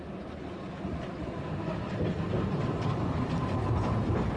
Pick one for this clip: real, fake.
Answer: fake